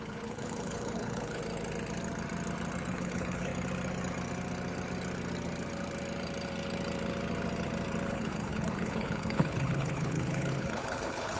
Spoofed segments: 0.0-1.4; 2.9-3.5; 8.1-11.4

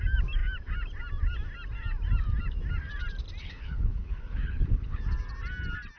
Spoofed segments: 3.4-5.0